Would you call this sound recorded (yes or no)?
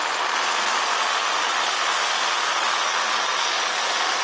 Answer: yes